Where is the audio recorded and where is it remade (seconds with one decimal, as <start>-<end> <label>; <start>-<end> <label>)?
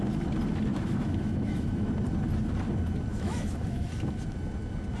0.0-0.7 recorded; 0.7-1.9 remade; 1.9-3.1 recorded; 3.1-3.9 remade; 3.9-5.0 recorded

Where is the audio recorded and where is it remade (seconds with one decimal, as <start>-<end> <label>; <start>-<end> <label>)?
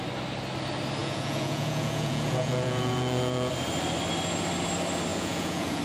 0.0-1.0 recorded; 1.0-3.5 remade; 3.5-5.1 recorded; 5.1-5.8 remade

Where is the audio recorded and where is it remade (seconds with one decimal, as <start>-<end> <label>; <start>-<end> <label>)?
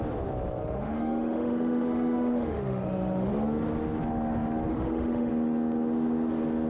0.0-0.6 recorded; 0.6-3.3 remade; 3.3-4.7 recorded; 4.7-5.3 remade; 5.3-6.7 recorded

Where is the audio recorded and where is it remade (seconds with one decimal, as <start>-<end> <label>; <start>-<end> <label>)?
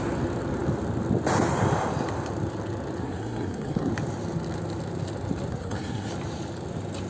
0.0-3.0 recorded; 3.0-3.9 remade; 3.9-5.5 recorded; 5.5-6.1 remade; 6.1-7.1 recorded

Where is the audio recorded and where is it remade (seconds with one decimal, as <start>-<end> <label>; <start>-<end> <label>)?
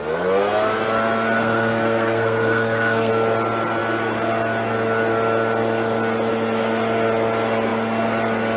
0.0-1.4 recorded; 1.4-3.1 remade; 3.1-8.6 recorded